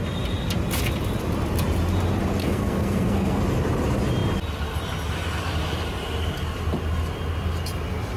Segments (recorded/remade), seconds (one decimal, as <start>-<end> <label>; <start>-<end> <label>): 0.0-2.4 recorded; 2.4-3.4 remade; 3.4-8.2 recorded